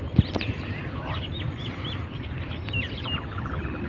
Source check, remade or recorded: recorded